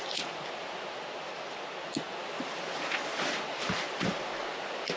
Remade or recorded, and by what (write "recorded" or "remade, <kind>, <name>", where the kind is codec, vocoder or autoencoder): recorded